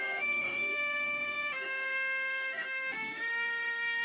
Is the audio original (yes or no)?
no